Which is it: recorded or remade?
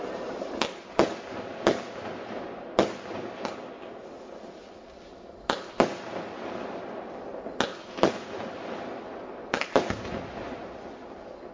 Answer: recorded